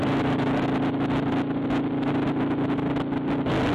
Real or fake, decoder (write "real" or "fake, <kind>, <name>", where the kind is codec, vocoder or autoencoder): real